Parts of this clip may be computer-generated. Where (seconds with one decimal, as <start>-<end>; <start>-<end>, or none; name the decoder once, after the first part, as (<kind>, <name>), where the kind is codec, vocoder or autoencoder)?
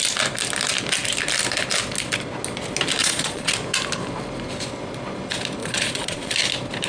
3.0-3.5 (vocoder, Vocos); 5.6-6.3